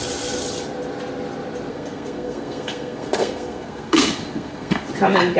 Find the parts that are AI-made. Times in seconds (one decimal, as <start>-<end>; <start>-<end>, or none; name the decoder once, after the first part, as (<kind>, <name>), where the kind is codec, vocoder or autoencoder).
1.7-4.9 (codec, SNAC)